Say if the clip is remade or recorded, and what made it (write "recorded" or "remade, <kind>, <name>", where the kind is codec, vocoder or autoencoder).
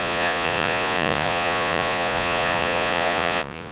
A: remade, vocoder, Vocos